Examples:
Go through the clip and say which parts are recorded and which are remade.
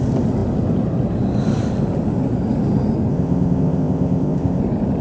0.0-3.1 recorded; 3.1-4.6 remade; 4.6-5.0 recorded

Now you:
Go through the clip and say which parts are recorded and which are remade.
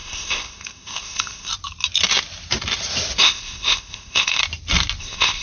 0.0-1.5 remade; 1.5-3.2 recorded; 3.2-4.4 remade; 4.4-5.0 recorded; 5.0-5.4 remade